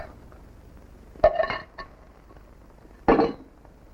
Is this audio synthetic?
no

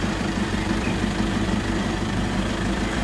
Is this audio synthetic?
yes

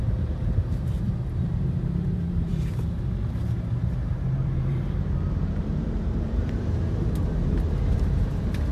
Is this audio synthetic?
yes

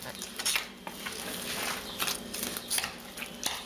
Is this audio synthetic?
no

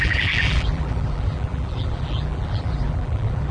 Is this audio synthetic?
yes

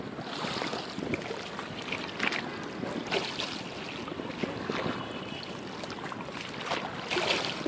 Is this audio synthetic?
no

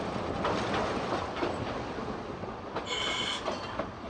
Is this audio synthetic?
no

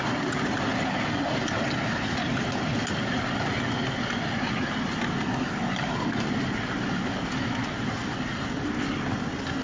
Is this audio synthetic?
no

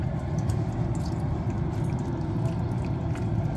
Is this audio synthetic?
no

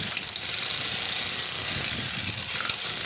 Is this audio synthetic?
no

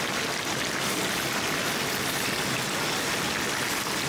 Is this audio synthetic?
no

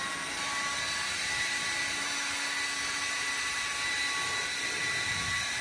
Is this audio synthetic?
no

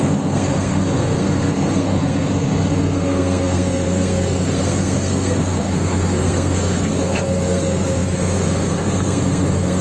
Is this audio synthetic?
yes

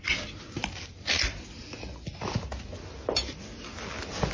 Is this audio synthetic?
no